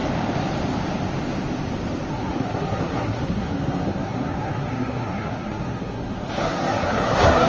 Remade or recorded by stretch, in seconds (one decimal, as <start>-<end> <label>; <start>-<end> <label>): 0.0-2.1 recorded; 2.1-7.5 remade